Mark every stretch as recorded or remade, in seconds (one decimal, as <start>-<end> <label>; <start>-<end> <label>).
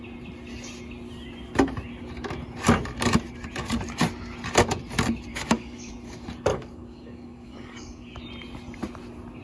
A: 0.0-5.3 recorded; 5.3-5.9 remade; 5.9-6.5 recorded; 6.5-8.2 remade; 8.2-9.4 recorded